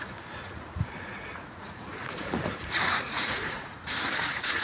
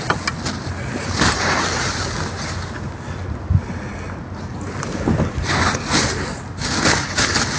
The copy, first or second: first